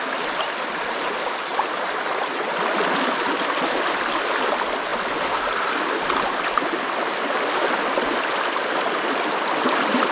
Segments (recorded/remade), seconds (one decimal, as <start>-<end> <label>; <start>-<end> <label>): 0.0-10.1 recorded